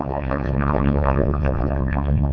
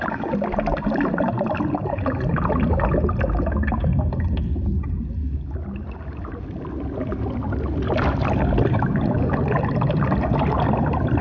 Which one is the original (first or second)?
second